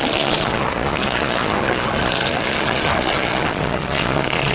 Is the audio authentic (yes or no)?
no